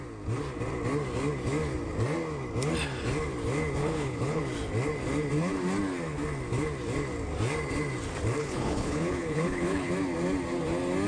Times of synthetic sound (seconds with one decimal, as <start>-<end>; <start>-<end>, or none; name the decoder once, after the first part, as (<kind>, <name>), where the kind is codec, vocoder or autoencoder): 3.8-4.4 (codec, HILCodec); 8.4-9.9